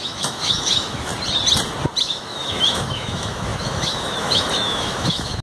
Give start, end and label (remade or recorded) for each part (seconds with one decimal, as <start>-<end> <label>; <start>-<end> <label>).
0.0-1.1 remade; 1.1-2.0 recorded; 2.0-5.4 remade